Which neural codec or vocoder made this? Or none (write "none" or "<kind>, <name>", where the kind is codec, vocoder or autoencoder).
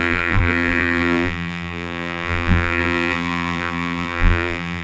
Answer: vocoder, BigVGAN v2